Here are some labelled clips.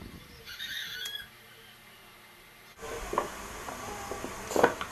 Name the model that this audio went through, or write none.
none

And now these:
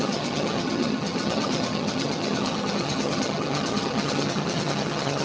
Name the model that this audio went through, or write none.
vocoder, HiFi-GAN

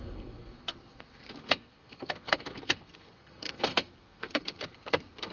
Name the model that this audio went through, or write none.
codec, SNAC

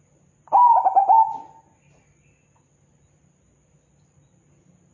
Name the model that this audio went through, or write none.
none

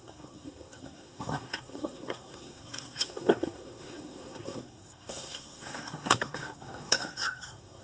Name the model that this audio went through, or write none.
codec, SNAC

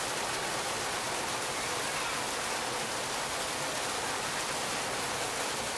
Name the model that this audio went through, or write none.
none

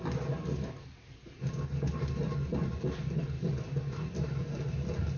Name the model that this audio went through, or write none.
none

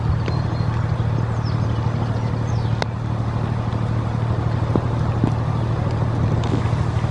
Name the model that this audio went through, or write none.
none